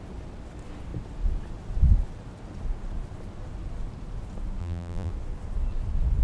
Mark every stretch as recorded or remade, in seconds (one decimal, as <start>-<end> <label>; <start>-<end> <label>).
0.0-4.6 recorded; 4.6-5.1 remade; 5.1-6.2 recorded